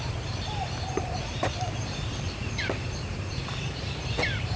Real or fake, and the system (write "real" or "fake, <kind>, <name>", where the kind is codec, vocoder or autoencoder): fake, vocoder, BigVGAN v2